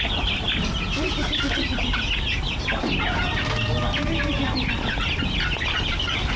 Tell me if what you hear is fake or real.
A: real